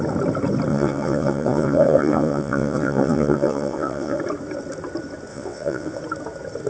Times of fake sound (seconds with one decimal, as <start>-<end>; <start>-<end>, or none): 0.7-4.2; 5.3-6.0